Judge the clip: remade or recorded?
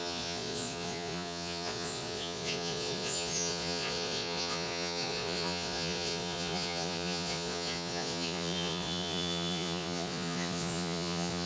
remade